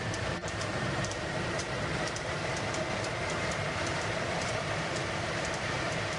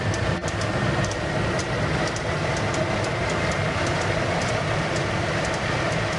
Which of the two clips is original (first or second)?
second